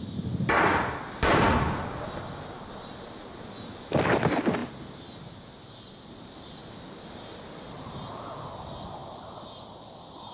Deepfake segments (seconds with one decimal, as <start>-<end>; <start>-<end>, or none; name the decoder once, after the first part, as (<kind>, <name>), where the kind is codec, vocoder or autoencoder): none